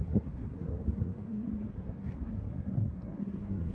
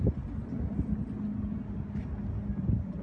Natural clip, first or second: second